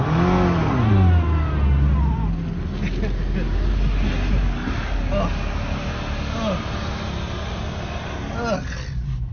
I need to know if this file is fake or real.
real